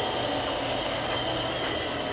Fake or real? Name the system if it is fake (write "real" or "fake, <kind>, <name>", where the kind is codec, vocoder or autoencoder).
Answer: real